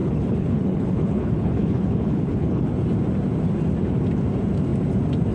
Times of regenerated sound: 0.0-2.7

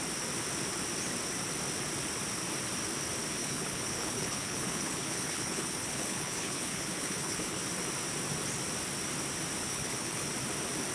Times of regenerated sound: 3.4-7.6; 9.6-10.3

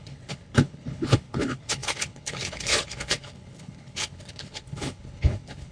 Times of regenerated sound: 0.0-5.7

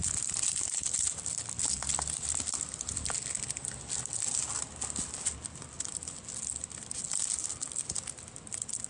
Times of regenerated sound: none

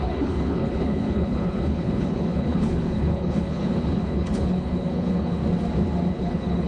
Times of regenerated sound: 0.0-5.4; 6.1-6.7

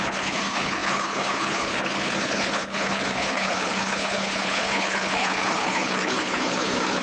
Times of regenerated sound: 0.0-7.0

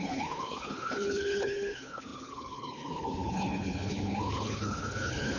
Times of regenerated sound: 0.0-5.4

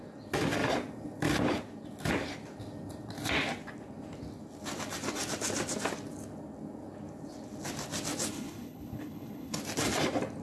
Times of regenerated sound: 8.3-9.6